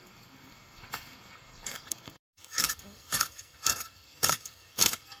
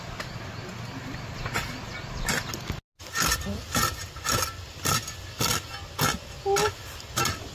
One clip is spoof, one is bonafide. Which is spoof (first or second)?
first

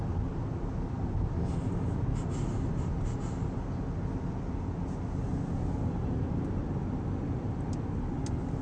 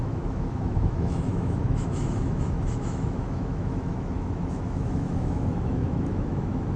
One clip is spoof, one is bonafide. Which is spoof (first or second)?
second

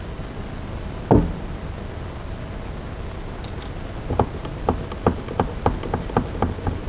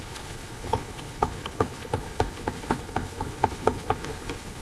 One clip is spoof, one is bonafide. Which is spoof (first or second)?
second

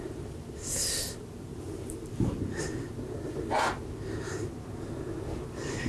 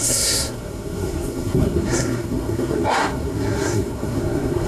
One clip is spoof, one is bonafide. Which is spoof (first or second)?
second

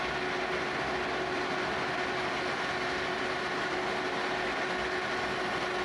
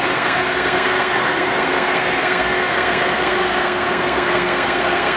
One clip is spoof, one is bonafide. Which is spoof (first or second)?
second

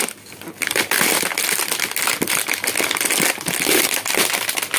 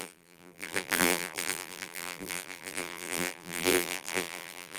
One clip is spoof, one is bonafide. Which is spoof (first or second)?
second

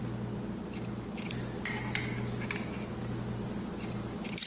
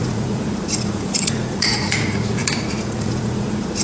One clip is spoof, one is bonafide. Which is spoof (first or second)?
second